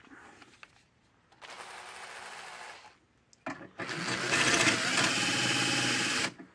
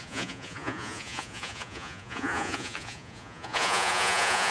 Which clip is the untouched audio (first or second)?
first